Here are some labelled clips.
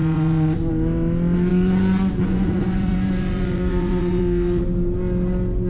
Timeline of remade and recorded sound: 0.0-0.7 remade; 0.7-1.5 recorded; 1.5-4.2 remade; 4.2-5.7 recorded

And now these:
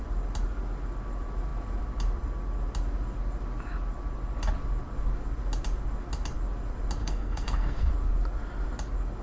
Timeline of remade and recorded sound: 0.0-7.0 recorded; 7.0-7.9 remade; 7.9-9.2 recorded

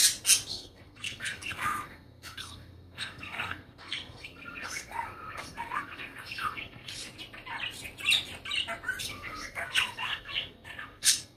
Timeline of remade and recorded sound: 0.0-0.5 recorded; 0.5-6.9 remade; 6.9-9.0 recorded; 9.0-11.4 remade

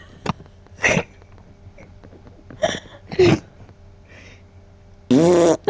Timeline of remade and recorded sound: 0.0-2.9 recorded; 2.9-3.7 remade; 3.7-5.7 recorded

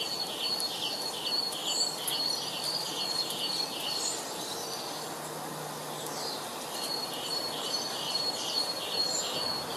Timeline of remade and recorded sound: 0.0-7.0 recorded; 7.0-8.9 remade; 8.9-9.8 recorded

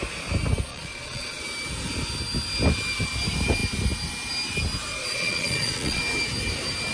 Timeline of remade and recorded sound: 0.0-0.7 recorded; 0.7-1.4 remade; 1.4-5.0 recorded; 5.0-6.0 remade; 6.0-6.9 recorded

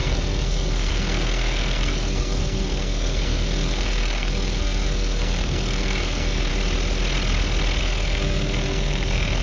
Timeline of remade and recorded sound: 0.0-6.5 remade; 6.5-7.8 recorded; 7.8-9.4 remade